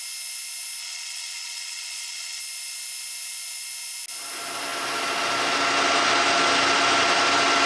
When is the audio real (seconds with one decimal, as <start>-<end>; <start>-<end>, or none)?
0.0-0.8; 2.4-7.7